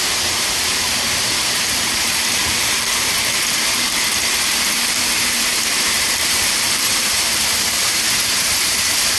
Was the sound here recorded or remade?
remade